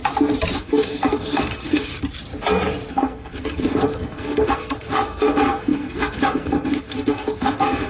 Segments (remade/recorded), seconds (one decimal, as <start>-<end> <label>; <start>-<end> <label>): 0.0-0.6 recorded; 0.6-1.9 remade; 1.9-2.9 recorded; 2.9-7.9 remade